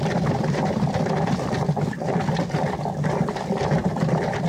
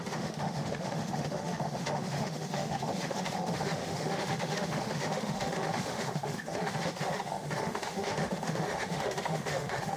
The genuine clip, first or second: first